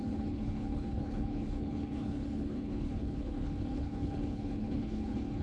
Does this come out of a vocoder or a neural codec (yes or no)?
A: yes